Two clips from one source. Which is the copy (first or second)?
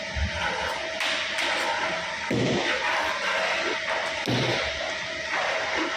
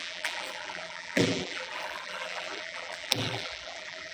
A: second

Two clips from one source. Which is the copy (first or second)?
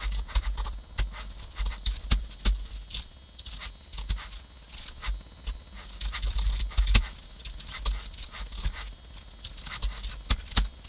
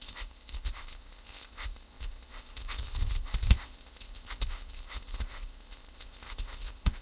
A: second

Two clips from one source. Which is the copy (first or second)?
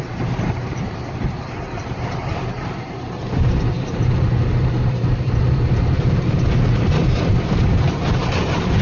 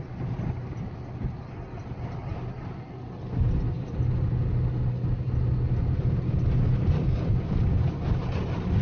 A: first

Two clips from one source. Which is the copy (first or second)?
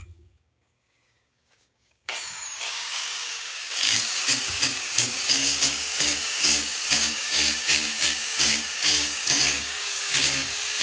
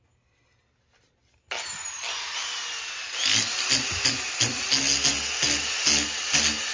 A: first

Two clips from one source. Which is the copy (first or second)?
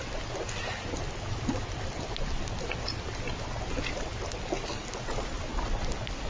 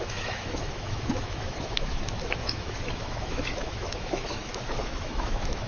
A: second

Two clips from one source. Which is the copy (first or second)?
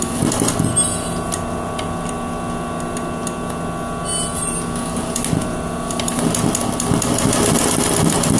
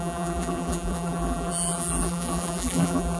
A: second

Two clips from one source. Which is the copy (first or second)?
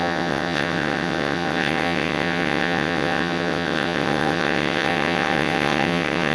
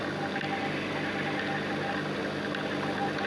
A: first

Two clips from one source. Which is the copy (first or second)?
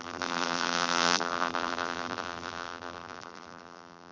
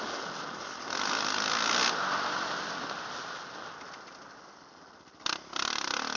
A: first